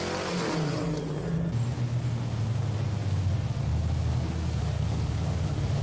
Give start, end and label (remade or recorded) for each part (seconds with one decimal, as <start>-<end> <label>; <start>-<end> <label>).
0.0-3.0 recorded; 3.0-3.6 remade; 3.6-4.1 recorded; 4.1-5.8 remade